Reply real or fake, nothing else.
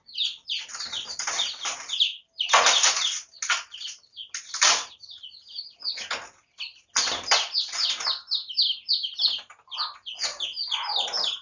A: real